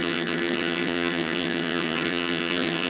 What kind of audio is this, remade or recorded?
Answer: remade